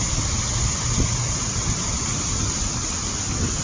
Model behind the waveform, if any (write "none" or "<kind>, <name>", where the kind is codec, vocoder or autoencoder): none